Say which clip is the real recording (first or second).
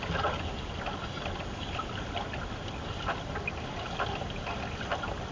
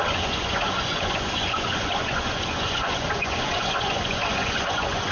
first